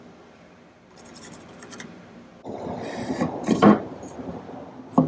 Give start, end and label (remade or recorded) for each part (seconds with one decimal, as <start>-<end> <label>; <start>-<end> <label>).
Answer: 0.0-2.3 remade; 2.3-2.9 recorded; 2.9-4.3 remade; 4.3-5.1 recorded